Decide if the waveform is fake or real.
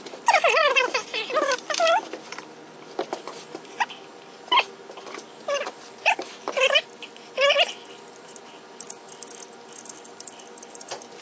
real